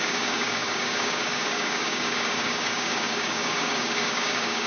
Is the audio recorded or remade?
remade